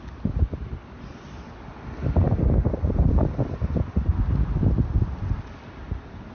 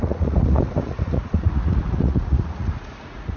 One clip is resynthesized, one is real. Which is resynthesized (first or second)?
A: second